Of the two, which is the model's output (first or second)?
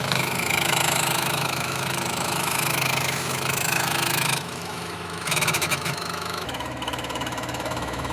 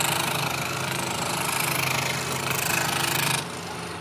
first